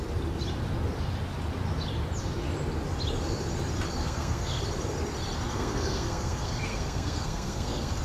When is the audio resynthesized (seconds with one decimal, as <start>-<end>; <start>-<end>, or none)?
4.0-4.6; 5.5-8.0